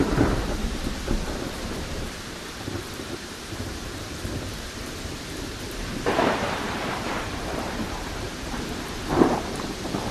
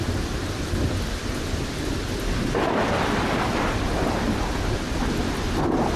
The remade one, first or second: first